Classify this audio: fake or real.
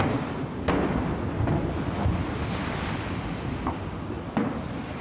real